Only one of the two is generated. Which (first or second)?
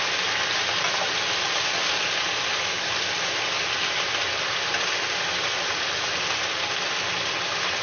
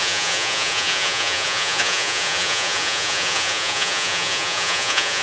second